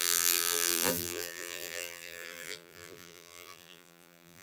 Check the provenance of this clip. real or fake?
fake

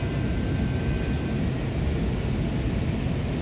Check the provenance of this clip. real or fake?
real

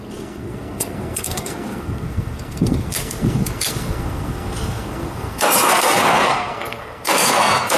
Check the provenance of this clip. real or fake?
fake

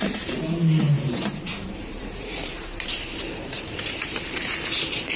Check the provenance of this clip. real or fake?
fake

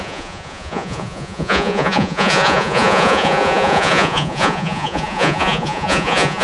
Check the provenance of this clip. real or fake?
fake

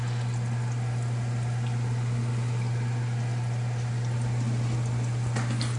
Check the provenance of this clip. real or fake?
real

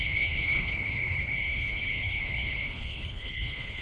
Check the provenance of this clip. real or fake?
fake